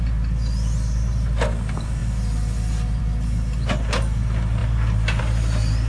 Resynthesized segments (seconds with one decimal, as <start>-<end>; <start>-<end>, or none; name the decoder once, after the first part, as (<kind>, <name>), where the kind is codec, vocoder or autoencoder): none

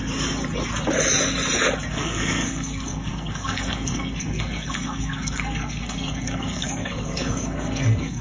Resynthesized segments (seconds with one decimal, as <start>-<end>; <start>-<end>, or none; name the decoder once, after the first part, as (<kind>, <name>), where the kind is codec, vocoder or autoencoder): 1.9-8.2 (codec, SNAC)

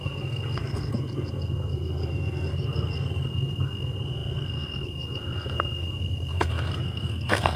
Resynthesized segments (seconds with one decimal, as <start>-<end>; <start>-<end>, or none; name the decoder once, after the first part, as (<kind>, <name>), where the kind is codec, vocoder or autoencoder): 0.0-7.6 (codec, SNAC)

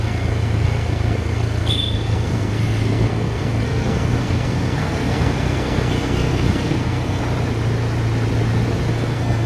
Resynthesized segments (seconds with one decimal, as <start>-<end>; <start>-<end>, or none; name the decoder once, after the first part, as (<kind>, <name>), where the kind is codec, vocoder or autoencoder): 0.0-7.2 (codec, SNAC); 8.9-9.5

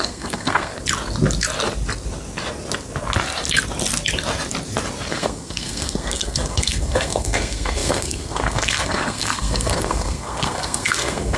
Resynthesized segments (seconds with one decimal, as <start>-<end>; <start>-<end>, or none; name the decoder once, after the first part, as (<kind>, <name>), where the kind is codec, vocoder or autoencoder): 0.0-0.7 (codec, SNAC); 5.1-11.4

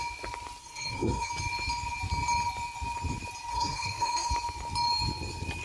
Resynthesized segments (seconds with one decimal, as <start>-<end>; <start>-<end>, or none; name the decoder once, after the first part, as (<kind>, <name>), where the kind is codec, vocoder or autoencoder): 0.6-1.3 (codec, SNAC); 3.5-4.3

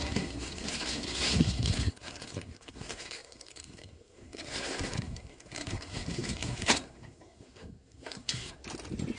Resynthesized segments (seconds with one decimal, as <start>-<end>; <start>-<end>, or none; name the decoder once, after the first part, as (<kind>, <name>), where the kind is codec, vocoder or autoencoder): 0.0-8.6 (codec, SNAC)